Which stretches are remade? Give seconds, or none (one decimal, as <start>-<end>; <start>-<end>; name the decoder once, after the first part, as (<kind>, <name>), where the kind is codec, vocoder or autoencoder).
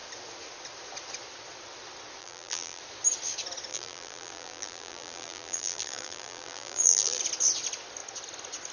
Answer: 2.2-2.8 (vocoder, BigVGAN v2); 3.7-7.2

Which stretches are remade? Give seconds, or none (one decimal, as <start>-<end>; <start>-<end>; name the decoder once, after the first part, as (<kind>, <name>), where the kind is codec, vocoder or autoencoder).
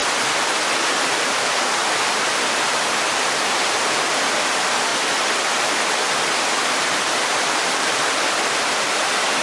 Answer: 0.0-4.9 (vocoder, BigVGAN v2); 5.6-9.4